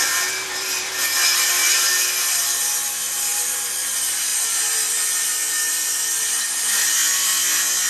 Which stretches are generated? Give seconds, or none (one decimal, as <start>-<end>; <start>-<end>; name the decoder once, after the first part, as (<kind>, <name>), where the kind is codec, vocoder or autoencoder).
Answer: 0.0-1.6 (vocoder, BigVGAN v2); 2.2-4.3; 5.5-7.0